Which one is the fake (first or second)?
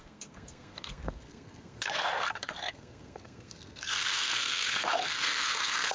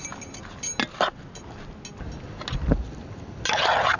first